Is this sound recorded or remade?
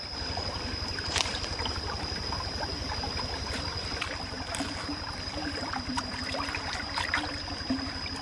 recorded